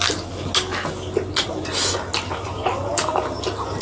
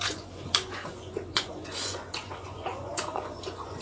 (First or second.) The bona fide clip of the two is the first